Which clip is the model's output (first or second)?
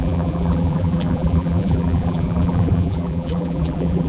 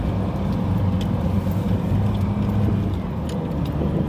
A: first